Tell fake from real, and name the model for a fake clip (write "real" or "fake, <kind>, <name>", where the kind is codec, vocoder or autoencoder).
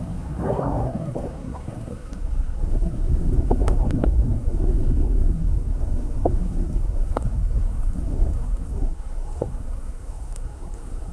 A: fake, codec, SNAC